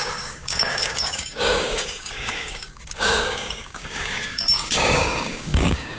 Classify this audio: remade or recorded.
remade